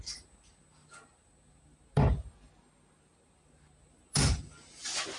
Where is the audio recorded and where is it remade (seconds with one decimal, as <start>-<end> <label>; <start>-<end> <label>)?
0.0-5.2 recorded